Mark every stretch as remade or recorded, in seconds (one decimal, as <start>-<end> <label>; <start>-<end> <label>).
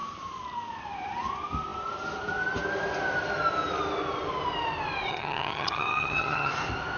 0.0-5.1 recorded; 5.1-6.5 remade; 6.5-7.0 recorded